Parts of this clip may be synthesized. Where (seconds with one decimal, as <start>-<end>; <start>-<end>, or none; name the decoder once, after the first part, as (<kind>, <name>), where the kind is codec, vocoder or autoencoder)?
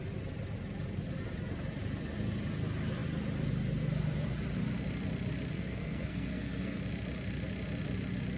5.5-6.8 (codec, SNAC)